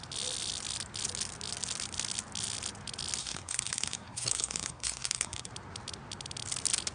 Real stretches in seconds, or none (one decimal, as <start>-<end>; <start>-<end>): 0.0-3.2; 5.5-6.9